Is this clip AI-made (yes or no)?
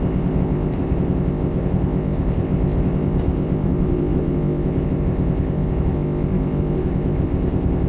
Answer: yes